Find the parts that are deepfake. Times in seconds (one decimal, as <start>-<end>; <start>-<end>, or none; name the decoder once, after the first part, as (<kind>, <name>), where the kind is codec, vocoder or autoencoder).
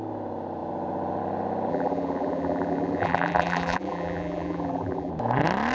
1.7-5.1 (vocoder, BigVGAN v2)